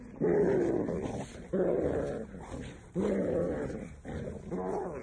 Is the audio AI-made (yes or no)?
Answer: no